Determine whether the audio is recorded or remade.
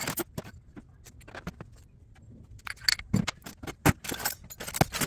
recorded